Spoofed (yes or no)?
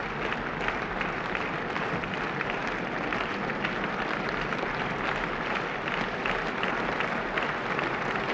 no